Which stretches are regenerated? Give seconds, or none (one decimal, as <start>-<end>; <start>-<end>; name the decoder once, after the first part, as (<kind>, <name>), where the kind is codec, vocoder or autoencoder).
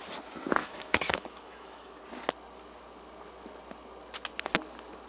0.6-2.0 (autoencoder, DAC-VAE)